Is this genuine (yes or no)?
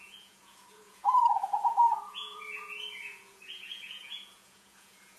no